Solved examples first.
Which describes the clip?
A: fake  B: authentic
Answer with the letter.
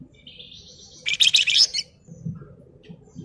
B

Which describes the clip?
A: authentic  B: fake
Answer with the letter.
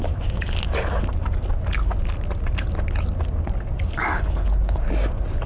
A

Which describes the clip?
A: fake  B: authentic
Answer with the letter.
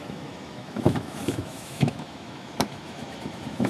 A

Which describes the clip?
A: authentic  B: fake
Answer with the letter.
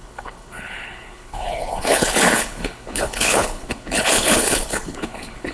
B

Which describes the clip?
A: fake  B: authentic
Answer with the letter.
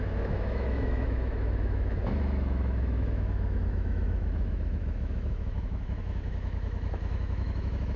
A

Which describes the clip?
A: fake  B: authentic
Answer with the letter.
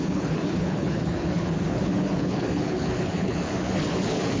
A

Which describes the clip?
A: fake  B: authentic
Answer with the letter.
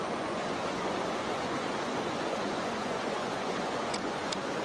A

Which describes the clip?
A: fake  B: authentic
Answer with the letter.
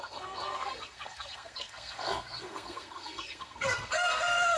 A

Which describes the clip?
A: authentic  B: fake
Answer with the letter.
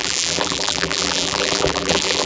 B